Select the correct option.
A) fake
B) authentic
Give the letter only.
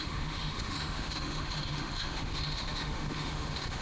A